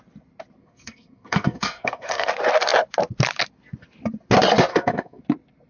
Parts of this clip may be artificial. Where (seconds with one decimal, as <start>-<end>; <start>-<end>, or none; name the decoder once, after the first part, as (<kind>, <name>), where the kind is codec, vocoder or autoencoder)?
0.6-2.3 (codec, SNAC); 4.7-5.2